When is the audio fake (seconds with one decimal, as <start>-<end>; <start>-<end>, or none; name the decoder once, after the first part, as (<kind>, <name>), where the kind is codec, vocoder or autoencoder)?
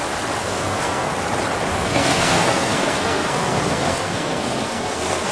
0.4-1.1 (codec, SNAC); 1.7-5.3